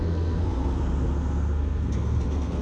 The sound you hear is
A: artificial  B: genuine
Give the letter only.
A